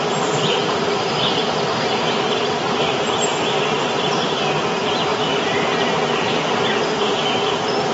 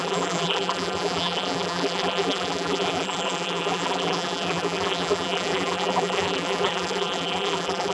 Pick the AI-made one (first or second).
second